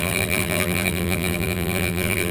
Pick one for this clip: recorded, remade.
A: remade